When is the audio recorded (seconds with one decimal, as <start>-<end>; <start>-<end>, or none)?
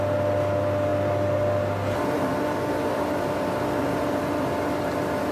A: 0.0-5.3